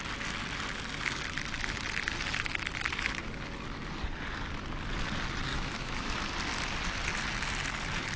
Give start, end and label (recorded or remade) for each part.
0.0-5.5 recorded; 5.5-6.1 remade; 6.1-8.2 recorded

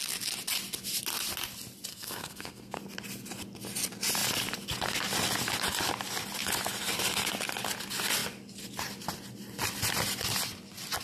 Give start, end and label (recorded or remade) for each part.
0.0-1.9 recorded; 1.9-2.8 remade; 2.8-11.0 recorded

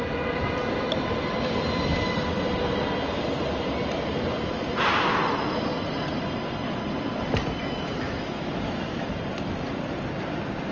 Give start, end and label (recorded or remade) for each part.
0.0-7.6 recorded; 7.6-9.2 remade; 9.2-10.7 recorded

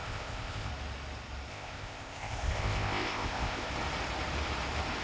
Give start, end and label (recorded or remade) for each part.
0.0-0.7 remade; 0.7-1.5 recorded; 1.5-3.7 remade; 3.7-5.0 recorded